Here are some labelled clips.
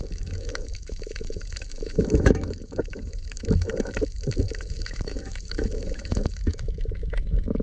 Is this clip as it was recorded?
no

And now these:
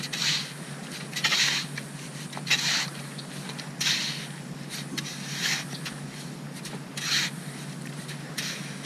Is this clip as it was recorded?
yes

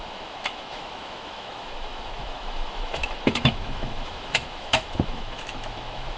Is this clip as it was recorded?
no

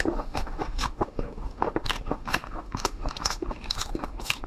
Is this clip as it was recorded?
no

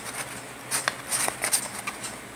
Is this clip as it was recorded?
yes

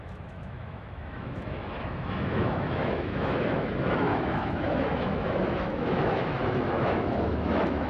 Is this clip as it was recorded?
no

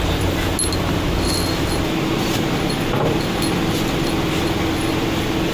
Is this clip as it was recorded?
yes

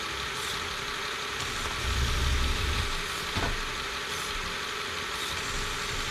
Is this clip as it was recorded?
yes